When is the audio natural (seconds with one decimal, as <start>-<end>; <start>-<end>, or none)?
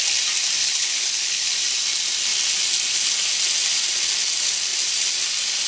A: 0.0-0.6; 1.5-5.7